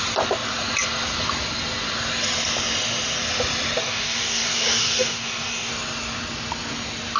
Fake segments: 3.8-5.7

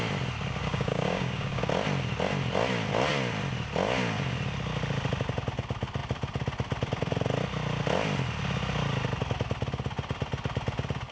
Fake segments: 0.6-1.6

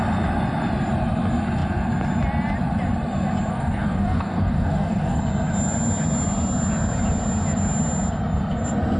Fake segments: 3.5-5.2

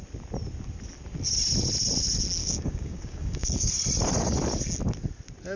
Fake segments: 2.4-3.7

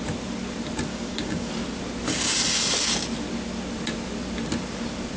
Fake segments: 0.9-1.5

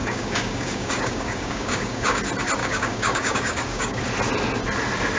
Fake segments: 0.0-2.2; 2.6-4.0

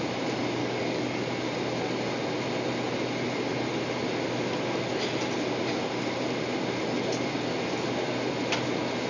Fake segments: 0.6-1.2

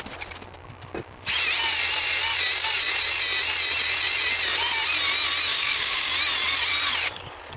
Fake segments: 5.5-6.1